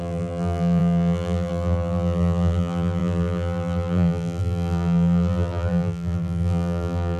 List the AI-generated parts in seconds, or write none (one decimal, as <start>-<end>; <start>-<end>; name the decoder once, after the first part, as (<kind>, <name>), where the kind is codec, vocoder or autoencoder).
0.0-7.2 (vocoder, BigVGAN v2)